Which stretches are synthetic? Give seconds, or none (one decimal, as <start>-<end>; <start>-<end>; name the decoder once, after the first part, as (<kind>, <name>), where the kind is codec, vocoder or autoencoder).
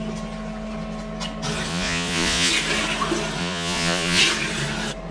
1.7-2.5 (vocoder, Vocos); 3.4-4.2